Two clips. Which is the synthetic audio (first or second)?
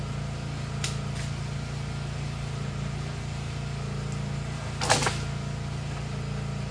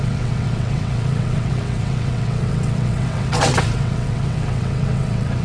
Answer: second